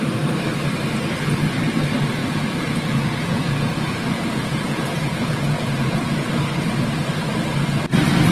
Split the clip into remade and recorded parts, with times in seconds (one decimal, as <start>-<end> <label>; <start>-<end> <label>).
0.0-2.2 recorded; 2.2-6.3 remade; 6.3-8.3 recorded

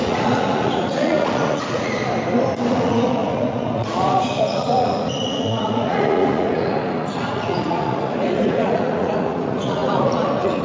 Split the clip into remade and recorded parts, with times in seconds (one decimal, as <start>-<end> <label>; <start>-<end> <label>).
0.0-2.0 remade; 2.0-2.7 recorded; 2.7-10.6 remade

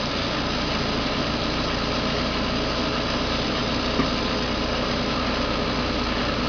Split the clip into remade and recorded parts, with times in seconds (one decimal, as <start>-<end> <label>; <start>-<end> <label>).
0.0-6.5 recorded

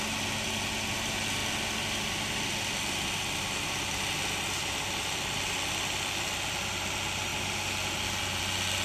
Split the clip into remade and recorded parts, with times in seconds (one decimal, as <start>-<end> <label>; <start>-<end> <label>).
0.0-8.8 recorded

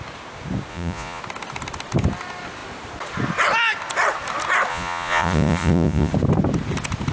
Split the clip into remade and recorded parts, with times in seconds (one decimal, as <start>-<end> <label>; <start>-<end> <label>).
0.0-0.7 recorded; 0.7-1.2 remade; 1.2-4.7 recorded; 4.7-6.1 remade; 6.1-7.1 recorded

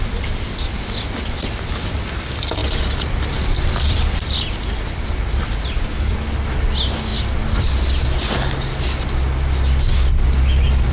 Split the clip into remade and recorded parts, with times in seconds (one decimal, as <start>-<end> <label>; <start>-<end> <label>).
0.0-10.9 recorded

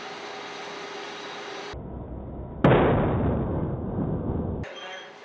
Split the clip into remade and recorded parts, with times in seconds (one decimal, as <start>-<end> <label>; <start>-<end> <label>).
0.0-5.2 recorded